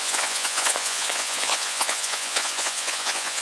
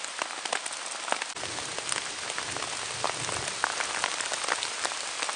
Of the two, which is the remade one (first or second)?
first